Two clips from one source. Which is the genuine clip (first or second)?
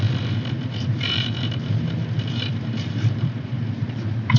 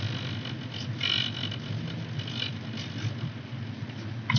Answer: second